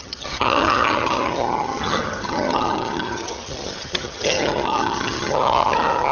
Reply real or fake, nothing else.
fake